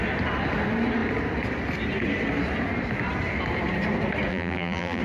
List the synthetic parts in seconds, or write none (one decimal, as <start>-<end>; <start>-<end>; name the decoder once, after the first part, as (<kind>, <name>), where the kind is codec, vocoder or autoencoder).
4.3-5.0 (vocoder, BigVGAN v2)